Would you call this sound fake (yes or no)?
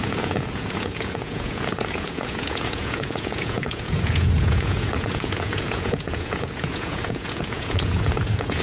yes